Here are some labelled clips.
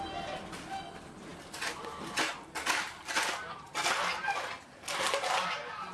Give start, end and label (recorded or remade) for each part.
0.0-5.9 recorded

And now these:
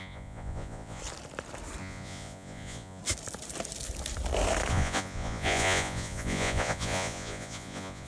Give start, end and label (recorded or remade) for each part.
0.0-1.0 remade; 1.0-1.8 recorded; 1.8-3.0 remade; 3.0-4.7 recorded; 4.7-8.1 remade

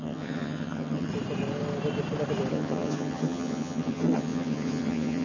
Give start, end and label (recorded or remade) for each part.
0.0-1.1 remade; 1.1-2.5 recorded; 2.5-5.2 remade